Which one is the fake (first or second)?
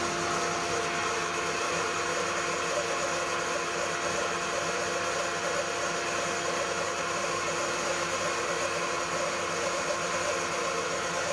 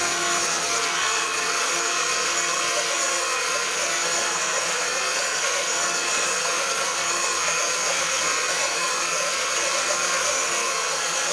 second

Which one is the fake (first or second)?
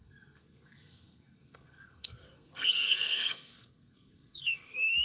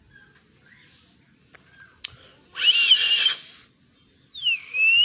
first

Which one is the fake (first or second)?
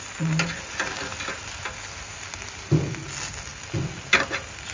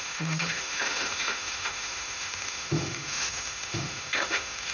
second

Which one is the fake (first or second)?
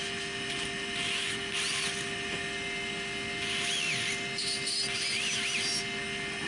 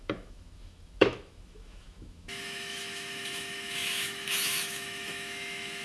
second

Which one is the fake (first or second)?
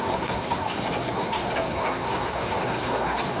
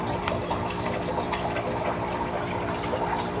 first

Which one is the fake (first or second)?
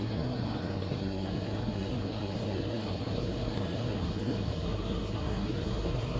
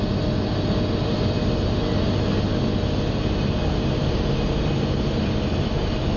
first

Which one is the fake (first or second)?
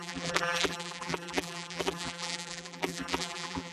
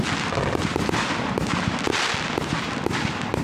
first